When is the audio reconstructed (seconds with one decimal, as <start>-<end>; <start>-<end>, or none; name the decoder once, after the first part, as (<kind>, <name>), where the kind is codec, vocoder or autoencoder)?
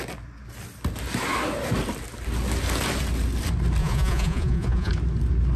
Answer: 3.8-4.9 (vocoder, Vocos)